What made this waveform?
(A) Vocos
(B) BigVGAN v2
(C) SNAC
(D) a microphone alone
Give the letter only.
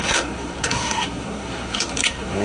C